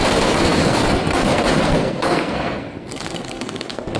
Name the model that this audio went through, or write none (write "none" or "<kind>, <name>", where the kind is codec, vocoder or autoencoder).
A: codec, SNAC